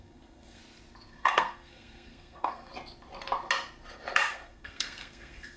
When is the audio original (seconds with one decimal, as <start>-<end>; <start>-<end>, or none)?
0.6-1.1; 2.7-4.1